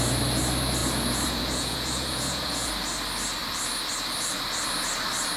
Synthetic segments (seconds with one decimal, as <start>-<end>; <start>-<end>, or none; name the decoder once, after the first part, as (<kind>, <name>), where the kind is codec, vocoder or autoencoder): 0.8-2.7 (vocoder, Vocos)